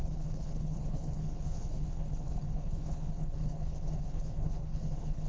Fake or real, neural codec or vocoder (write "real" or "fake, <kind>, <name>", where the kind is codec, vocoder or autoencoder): fake, codec, HILCodec